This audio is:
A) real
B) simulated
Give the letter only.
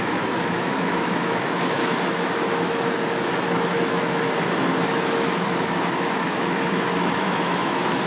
B